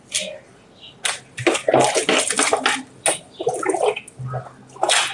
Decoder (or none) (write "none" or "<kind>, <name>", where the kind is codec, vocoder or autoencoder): none